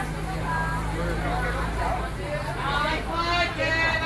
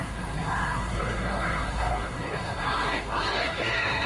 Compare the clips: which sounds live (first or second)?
first